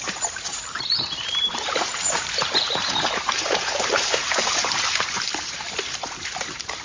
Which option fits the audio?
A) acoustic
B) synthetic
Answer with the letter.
B